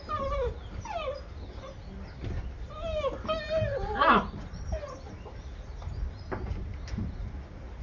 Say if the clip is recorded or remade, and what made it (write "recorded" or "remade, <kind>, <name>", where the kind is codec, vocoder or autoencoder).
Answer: recorded